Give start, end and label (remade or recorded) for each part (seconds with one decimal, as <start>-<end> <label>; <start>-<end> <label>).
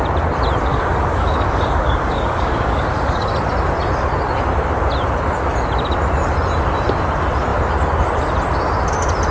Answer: 0.0-0.7 recorded; 0.7-3.3 remade; 3.3-9.3 recorded